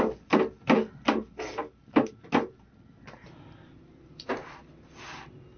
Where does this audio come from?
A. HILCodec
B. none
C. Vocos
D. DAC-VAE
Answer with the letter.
B